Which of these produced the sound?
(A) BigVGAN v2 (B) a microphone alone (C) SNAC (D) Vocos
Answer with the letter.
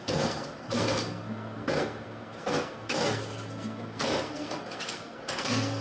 C